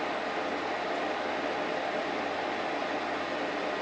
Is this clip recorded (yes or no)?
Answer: yes